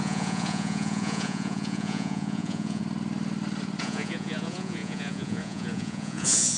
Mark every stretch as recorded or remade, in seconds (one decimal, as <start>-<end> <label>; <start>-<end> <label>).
0.0-2.8 remade; 2.8-3.8 recorded; 3.8-6.6 remade